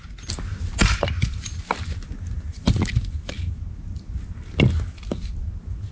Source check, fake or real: real